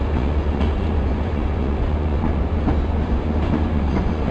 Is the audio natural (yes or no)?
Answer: no